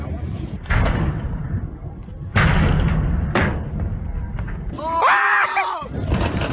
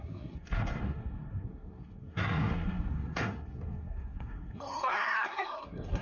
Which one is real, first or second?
first